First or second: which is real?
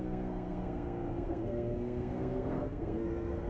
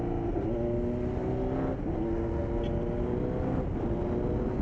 second